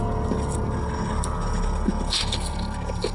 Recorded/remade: recorded